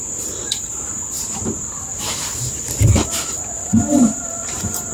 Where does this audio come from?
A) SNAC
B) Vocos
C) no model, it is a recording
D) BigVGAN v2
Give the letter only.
D